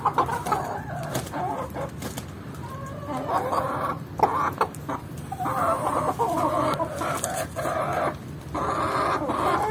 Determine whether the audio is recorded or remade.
recorded